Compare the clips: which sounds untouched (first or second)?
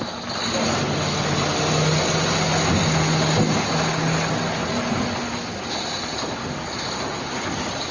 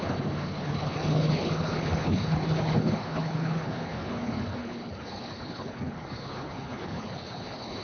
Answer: first